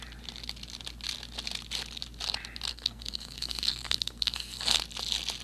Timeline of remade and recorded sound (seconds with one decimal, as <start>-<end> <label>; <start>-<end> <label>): 0.0-2.7 recorded; 2.7-4.8 remade; 4.8-5.4 recorded